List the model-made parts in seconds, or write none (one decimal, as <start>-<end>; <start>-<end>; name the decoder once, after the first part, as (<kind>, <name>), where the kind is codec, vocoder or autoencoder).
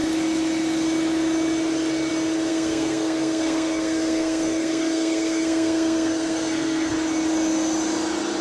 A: 2.5-6.9 (codec, SNAC)